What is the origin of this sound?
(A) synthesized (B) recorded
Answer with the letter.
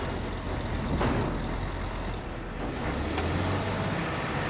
B